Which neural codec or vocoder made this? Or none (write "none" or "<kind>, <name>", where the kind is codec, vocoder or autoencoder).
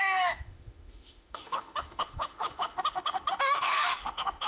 autoencoder, DAC-VAE